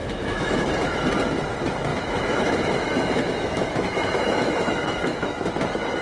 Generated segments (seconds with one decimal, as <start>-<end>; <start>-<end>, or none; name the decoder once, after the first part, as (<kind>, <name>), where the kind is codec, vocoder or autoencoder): 0.0-0.7 (autoencoder, DAC-VAE); 1.9-5.5